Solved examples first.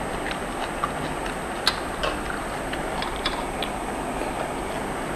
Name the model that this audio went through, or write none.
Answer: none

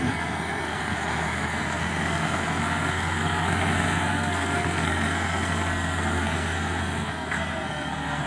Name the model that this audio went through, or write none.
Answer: codec, SNAC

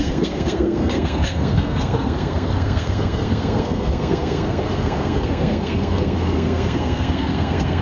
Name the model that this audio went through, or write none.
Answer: codec, SNAC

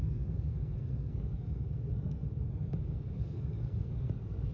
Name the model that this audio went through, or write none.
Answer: codec, SNAC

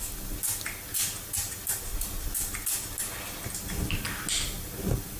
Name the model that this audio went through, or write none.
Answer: none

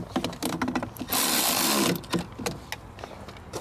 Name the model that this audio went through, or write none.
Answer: none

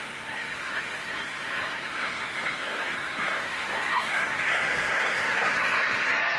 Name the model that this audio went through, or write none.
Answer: codec, SNAC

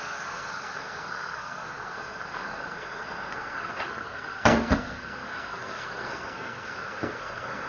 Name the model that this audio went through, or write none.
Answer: codec, SNAC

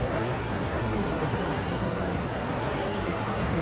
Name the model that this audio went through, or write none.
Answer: codec, SNAC